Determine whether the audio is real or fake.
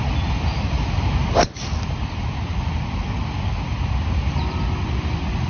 real